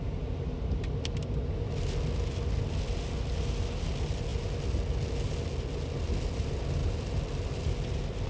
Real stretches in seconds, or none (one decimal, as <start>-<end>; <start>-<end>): 0.0-8.3